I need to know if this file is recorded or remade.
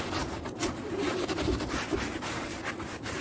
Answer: recorded